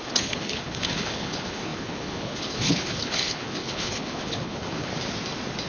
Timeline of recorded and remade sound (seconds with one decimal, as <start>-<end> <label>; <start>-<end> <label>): 0.0-4.9 remade; 4.9-5.7 recorded